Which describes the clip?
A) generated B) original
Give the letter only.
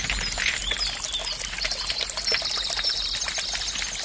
B